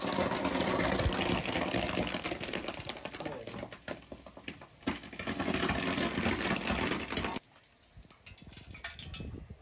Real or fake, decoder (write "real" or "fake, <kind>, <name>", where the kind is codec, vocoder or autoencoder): real